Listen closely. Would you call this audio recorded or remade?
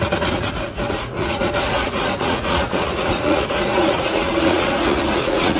remade